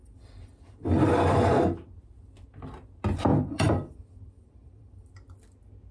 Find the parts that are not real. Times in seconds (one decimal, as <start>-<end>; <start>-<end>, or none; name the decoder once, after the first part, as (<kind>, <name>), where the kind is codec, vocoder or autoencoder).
0.0-1.6 (vocoder, BigVGAN v2); 3.3-5.1